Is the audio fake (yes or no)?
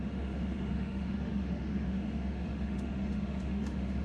yes